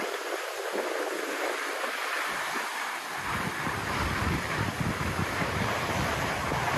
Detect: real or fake real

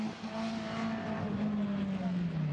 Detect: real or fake real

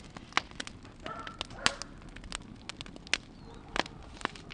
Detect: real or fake real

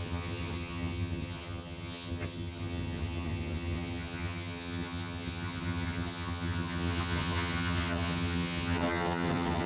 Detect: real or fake fake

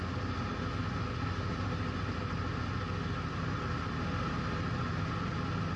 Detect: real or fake real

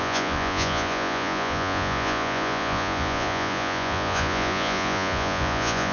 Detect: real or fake fake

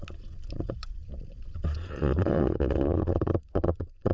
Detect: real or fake fake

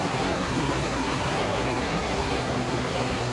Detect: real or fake fake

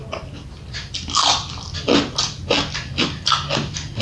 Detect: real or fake real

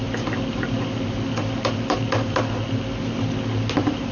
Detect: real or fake real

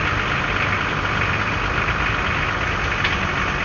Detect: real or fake real